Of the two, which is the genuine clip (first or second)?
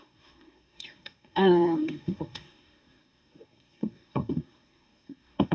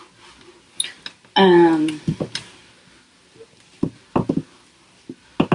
second